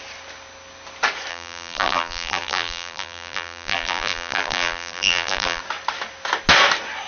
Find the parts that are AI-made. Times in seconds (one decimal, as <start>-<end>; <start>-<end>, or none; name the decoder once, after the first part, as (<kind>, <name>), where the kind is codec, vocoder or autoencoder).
1.3-5.6 (vocoder, BigVGAN v2)

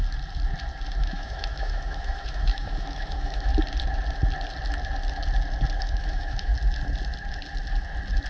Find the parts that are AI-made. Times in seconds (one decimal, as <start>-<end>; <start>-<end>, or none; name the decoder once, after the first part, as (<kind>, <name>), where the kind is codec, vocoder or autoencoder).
1.0-3.5 (autoencoder, DAC-VAE); 5.8-6.5

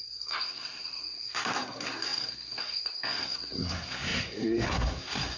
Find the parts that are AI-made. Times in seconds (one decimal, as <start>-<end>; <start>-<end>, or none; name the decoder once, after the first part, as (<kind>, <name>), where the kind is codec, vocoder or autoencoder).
0.0-5.4 (codec, SNAC)

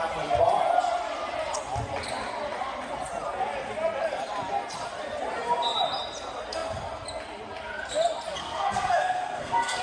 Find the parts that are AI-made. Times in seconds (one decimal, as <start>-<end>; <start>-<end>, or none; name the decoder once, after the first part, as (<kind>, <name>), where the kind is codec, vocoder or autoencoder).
8.4-9.8 (codec, SNAC)

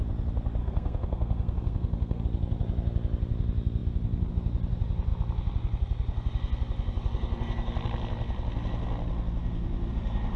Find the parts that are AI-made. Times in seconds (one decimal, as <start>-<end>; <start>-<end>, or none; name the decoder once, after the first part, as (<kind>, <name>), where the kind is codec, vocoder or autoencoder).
0.6-2.2 (codec, SNAC)

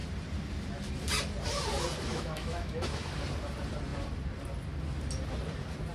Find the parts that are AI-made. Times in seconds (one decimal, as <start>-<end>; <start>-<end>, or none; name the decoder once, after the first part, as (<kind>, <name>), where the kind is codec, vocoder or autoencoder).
2.1-3.1 (autoencoder, DAC-VAE)